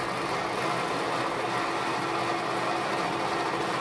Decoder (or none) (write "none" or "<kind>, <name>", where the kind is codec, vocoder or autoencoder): none